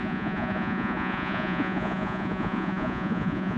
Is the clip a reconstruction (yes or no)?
yes